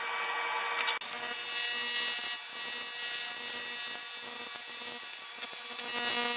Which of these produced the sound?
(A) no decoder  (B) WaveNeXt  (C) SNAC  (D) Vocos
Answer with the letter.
A